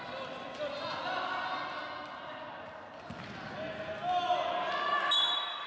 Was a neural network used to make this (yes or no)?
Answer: no